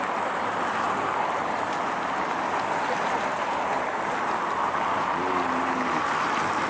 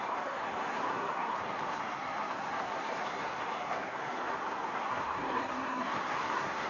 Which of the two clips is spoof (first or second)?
second